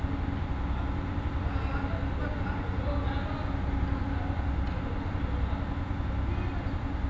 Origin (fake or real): real